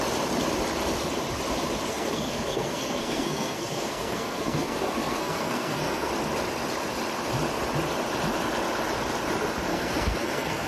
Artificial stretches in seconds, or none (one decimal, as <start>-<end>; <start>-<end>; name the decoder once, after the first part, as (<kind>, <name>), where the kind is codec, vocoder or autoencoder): 1.9-6.1 (codec, SNAC); 9.7-10.7